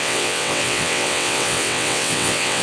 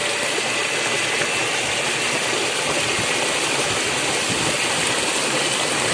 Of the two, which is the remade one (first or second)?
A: first